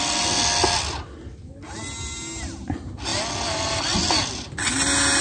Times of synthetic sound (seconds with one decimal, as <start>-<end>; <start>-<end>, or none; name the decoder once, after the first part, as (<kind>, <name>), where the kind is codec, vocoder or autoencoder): none